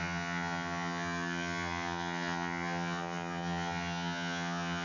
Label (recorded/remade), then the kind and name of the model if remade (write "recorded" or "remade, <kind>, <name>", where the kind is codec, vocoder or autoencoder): remade, vocoder, HiFi-GAN